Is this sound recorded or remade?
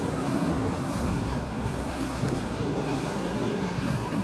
remade